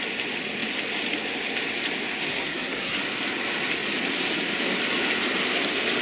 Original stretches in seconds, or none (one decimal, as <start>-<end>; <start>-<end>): 0.0-2.3; 3.0-6.0